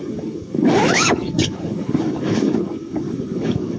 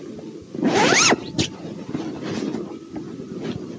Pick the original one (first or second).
second